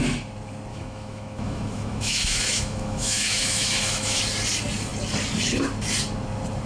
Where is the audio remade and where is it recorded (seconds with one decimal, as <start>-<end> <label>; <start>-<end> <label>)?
0.0-0.7 recorded; 0.7-4.2 remade; 4.2-6.7 recorded